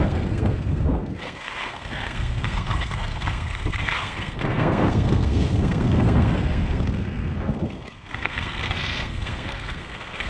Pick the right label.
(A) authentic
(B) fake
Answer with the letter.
B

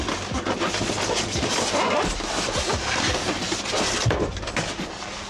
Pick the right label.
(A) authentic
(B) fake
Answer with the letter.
A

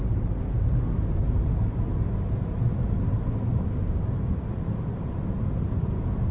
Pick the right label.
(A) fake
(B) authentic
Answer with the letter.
B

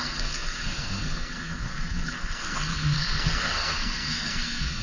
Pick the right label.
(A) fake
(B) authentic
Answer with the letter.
A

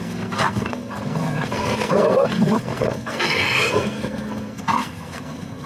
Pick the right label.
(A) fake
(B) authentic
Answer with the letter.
A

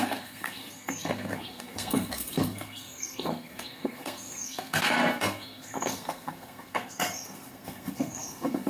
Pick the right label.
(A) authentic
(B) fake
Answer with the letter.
B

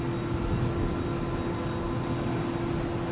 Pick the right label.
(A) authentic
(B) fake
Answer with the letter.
A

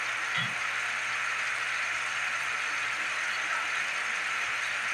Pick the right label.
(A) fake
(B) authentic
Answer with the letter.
B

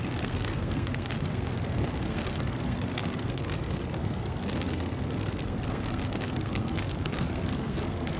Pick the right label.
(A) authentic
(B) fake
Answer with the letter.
B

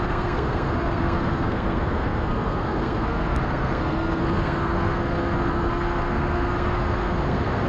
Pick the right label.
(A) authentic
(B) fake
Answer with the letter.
B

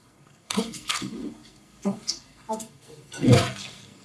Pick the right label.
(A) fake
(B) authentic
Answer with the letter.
A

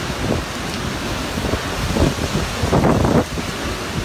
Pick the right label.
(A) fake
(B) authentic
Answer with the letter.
B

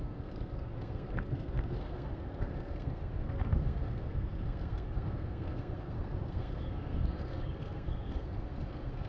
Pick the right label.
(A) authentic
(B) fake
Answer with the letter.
B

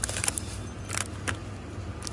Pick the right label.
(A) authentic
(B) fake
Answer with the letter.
A